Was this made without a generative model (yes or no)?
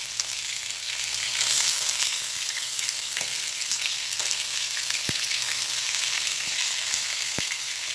no